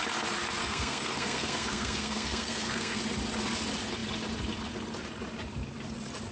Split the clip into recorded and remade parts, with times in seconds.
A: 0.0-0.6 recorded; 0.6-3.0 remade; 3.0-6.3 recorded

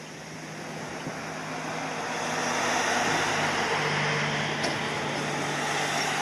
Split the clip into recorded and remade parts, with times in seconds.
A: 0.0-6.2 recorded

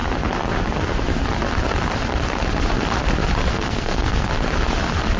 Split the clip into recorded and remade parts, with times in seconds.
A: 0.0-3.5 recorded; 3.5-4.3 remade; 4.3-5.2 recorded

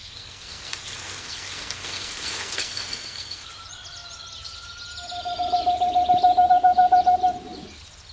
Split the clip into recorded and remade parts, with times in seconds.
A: 0.0-3.5 remade; 3.5-8.1 recorded

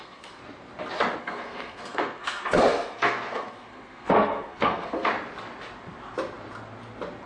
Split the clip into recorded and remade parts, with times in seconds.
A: 0.0-0.4 remade; 0.4-1.2 recorded; 1.2-5.1 remade; 5.1-7.3 recorded